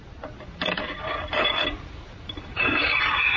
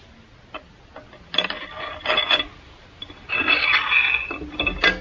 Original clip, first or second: second